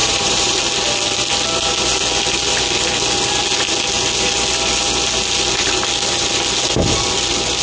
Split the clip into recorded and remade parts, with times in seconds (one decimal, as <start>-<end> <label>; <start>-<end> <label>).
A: 0.0-0.6 remade; 0.6-7.6 recorded